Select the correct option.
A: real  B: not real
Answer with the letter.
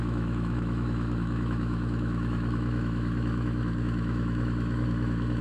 B